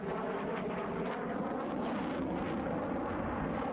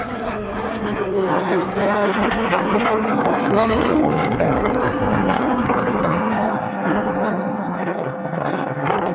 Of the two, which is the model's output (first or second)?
second